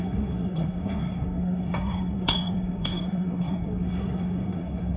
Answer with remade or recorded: remade